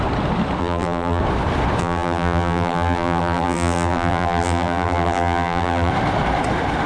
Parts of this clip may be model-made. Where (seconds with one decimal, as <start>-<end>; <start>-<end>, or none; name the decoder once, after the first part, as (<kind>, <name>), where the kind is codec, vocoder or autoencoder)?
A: 0.6-1.2 (vocoder, BigVGAN v2); 1.8-5.9